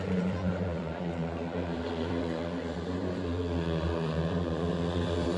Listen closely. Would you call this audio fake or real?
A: fake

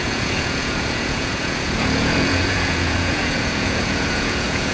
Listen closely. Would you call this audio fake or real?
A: fake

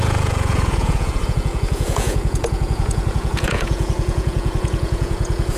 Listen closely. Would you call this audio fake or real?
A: fake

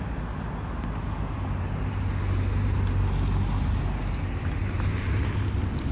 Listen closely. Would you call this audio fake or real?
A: real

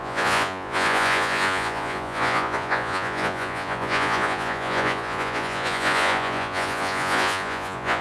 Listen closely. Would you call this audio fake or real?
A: fake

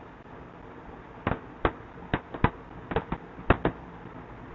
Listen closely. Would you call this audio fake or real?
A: real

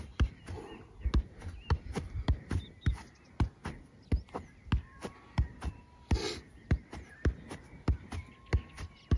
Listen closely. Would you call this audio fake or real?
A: real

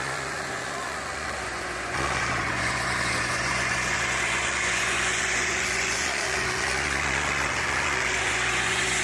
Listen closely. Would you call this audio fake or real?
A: fake